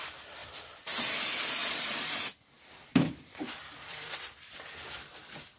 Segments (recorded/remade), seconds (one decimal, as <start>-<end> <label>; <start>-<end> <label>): 0.0-0.4 recorded; 0.4-1.1 remade; 1.1-1.6 recorded; 1.6-4.1 remade; 4.1-5.6 recorded